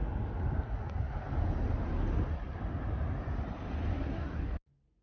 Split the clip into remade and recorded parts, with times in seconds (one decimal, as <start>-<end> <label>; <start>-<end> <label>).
0.0-3.9 recorded; 3.9-4.4 remade; 4.4-5.0 recorded